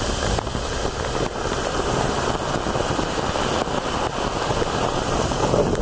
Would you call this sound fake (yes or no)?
no